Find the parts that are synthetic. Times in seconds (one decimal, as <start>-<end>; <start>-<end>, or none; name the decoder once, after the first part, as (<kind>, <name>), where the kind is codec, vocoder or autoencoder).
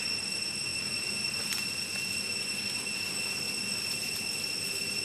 none